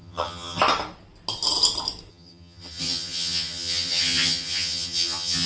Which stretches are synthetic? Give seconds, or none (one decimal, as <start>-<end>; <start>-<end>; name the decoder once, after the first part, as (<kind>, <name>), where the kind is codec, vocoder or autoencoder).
0.0-0.6 (vocoder, HiFi-GAN); 2.1-5.5